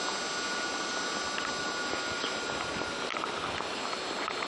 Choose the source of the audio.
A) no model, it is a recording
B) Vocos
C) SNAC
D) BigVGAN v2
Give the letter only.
A